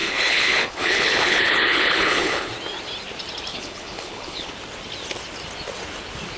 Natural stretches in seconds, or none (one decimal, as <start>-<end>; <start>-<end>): 2.5-3.5; 4.5-6.4